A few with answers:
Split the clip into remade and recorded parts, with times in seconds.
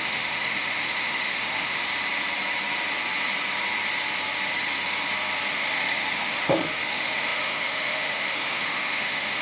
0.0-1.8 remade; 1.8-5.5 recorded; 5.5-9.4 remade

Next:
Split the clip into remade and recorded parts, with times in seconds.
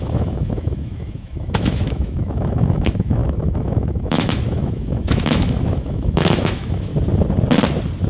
0.0-6.9 remade; 6.9-8.1 recorded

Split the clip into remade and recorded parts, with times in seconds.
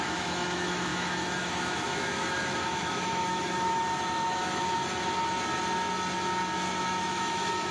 0.0-4.8 remade; 4.8-7.0 recorded; 7.0-7.7 remade